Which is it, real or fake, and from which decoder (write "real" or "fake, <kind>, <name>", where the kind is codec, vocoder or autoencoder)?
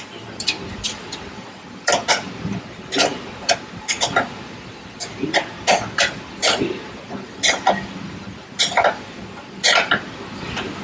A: real